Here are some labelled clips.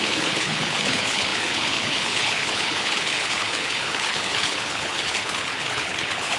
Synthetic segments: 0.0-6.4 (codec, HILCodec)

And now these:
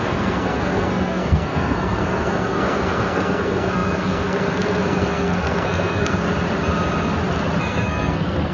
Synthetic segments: 0.0-6.3 (codec, SNAC); 7.6-8.5

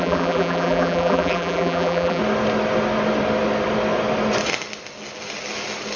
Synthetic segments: 0.0-2.2 (vocoder, BigVGAN v2)

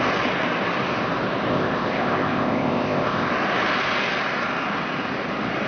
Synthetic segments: 1.5-3.3 (codec, ZipCodec)

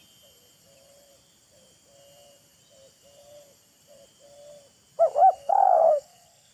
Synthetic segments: 5.4-6.5 (codec, SNAC)